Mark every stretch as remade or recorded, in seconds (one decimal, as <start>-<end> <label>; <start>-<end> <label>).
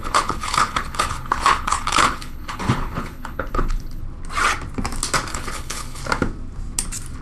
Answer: 0.0-4.0 remade; 4.0-5.3 recorded; 5.3-6.0 remade; 6.0-7.2 recorded